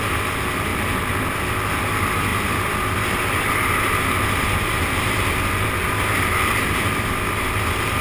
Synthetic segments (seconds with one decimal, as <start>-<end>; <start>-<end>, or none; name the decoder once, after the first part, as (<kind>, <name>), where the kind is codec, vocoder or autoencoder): none